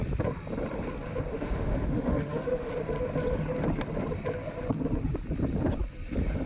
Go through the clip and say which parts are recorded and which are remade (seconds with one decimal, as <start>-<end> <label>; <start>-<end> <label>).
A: 0.0-1.3 recorded; 1.3-2.7 remade; 2.7-6.5 recorded